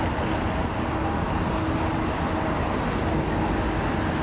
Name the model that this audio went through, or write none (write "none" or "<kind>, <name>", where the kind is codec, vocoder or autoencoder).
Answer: none